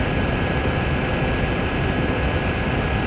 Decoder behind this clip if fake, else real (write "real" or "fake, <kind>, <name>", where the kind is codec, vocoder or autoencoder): real